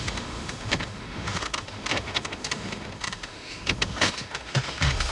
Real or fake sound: fake